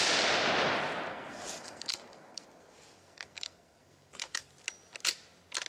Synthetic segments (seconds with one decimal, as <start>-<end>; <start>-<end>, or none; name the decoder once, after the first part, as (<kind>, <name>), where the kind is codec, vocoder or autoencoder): 1.1-4.5 (codec, SNAC)